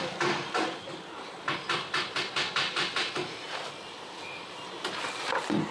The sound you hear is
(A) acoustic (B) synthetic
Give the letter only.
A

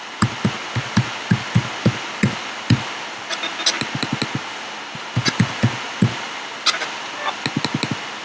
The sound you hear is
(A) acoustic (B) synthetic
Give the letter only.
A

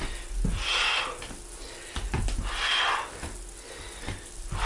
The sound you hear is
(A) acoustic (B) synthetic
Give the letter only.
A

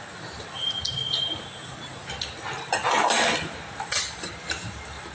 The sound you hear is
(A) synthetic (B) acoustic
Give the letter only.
B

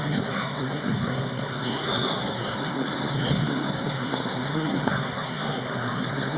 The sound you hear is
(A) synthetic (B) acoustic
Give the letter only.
A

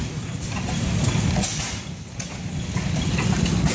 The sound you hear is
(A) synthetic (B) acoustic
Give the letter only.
B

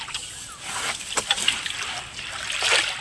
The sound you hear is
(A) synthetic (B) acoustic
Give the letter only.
B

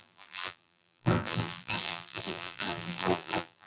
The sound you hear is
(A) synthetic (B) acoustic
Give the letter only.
A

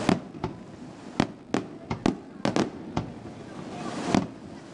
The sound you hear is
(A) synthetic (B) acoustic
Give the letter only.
B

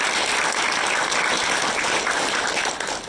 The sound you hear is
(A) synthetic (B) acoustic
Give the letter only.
B